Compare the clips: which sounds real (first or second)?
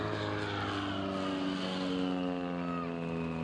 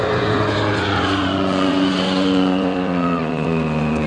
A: first